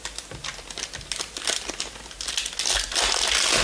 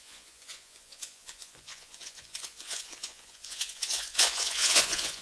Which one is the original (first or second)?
first